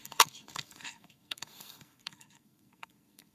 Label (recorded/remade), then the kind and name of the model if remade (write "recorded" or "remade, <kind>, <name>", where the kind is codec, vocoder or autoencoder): remade, codec, SNAC